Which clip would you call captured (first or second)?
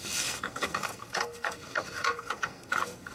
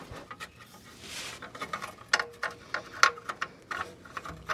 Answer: second